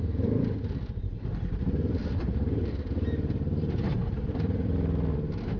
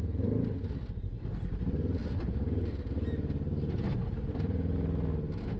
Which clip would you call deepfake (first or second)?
first